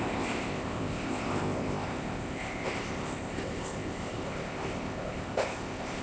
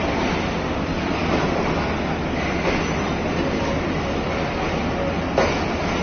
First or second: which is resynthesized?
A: first